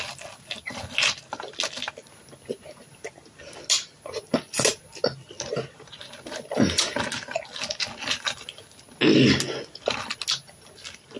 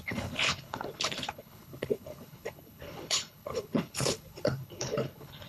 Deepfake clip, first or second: second